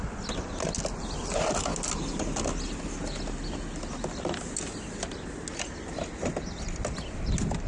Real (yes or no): yes